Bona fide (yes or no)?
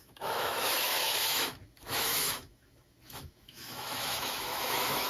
no